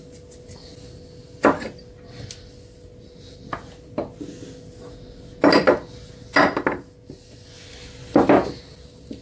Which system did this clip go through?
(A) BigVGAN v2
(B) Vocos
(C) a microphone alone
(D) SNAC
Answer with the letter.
C